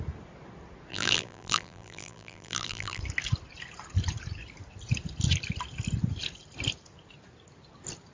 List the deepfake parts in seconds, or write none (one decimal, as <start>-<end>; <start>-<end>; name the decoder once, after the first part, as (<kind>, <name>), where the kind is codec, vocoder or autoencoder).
0.9-3.0 (vocoder, BigVGAN v2)